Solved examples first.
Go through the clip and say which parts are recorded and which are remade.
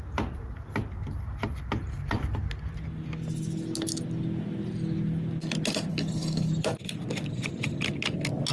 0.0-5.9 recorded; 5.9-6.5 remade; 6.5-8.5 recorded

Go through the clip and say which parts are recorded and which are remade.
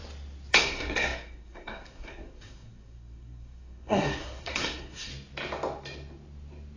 0.0-0.5 recorded; 0.5-5.1 remade; 5.1-6.8 recorded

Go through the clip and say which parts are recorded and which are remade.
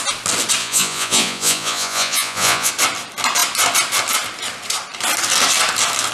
0.0-0.6 recorded; 0.6-2.7 remade; 2.7-6.1 recorded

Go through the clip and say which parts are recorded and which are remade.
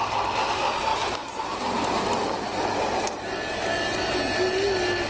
0.0-5.1 recorded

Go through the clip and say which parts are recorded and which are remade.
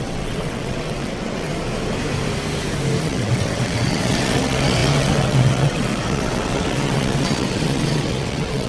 0.0-1.5 remade; 1.5-3.0 recorded; 3.0-8.7 remade